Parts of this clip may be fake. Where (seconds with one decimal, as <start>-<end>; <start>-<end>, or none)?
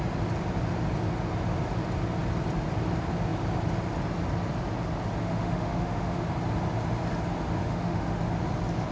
5.2-6.3; 7.6-8.2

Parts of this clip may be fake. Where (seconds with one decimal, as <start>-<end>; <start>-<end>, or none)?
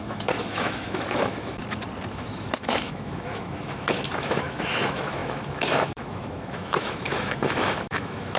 0.0-1.6; 2.1-8.4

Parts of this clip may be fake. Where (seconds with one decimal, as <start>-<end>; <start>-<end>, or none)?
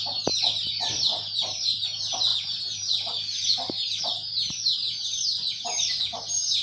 none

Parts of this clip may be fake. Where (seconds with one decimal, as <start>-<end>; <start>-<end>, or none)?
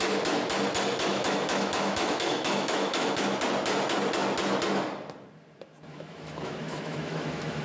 1.1-3.1; 5.9-7.6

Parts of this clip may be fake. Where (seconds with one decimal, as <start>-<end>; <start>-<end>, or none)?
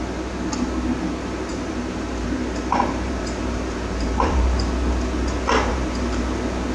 1.5-4.7; 5.7-6.2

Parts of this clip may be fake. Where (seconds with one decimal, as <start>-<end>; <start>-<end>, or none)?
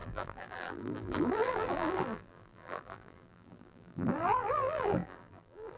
0.0-5.8